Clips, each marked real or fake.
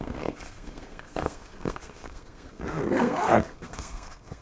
fake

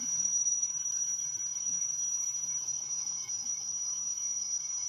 fake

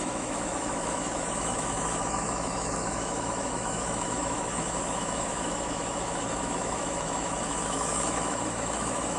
fake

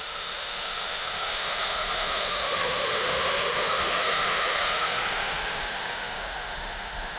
fake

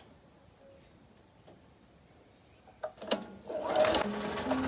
real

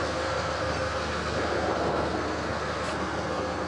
fake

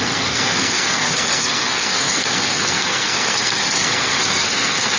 fake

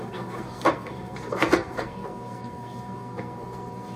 fake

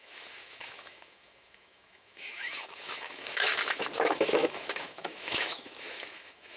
fake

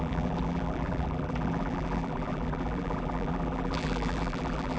fake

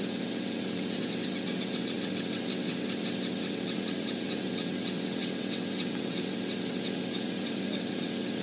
fake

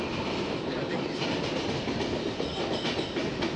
real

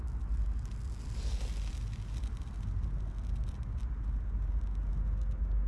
real